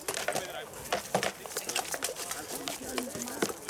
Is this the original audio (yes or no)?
yes